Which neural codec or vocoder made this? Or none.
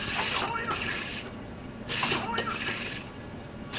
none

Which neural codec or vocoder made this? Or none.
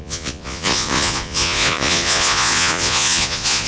vocoder, Vocos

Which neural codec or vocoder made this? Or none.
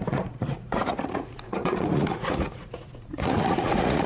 vocoder, Vocos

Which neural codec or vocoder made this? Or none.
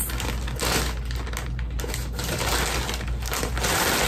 none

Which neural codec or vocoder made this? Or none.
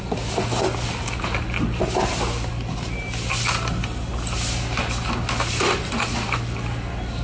none